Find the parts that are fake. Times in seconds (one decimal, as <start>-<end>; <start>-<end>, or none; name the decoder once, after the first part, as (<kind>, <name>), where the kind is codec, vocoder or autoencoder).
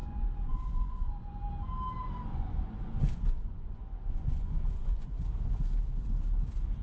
0.0-1.3 (vocoder, Vocos); 2.3-5.2